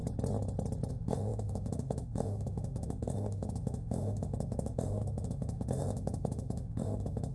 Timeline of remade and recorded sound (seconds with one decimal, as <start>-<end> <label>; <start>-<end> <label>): 0.0-0.9 recorded; 0.9-7.3 remade